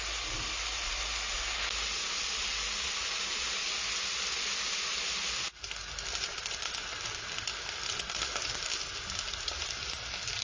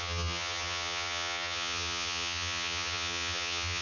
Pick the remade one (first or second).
second